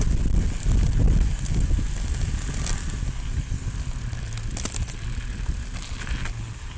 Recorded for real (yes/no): yes